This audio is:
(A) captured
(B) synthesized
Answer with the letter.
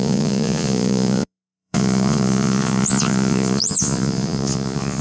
B